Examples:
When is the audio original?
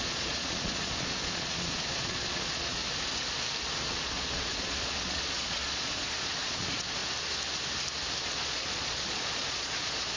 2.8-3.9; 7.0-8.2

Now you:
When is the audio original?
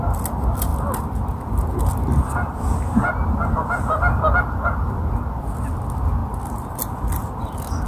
0.0-7.9